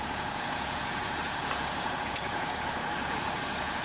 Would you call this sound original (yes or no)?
no